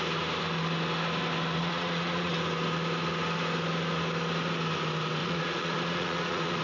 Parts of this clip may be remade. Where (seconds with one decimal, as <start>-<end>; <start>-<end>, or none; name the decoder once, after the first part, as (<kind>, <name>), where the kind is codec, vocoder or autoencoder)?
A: 1.6-2.3 (vocoder, Vocos); 5.2-6.6